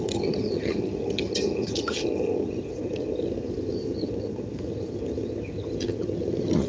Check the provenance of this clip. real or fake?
fake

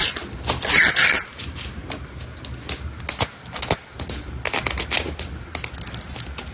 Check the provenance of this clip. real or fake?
real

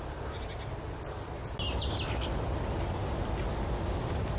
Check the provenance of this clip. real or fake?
real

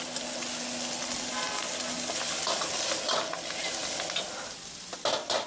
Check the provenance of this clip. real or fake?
real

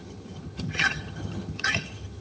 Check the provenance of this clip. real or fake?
fake